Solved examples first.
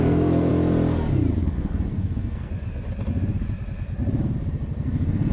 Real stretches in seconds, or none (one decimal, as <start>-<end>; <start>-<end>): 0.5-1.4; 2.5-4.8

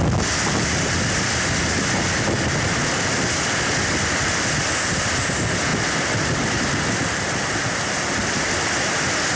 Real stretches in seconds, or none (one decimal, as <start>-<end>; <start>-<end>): 0.0-9.4

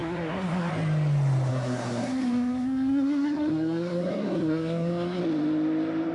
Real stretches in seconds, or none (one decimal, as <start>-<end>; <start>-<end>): 0.7-1.5; 5.2-6.1

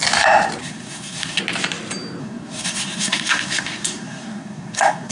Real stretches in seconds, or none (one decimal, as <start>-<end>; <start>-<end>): 0.0-0.6; 1.4-2.2

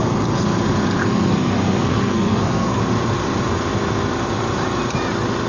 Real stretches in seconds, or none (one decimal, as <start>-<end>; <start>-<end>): 0.0-1.0; 2.8-5.5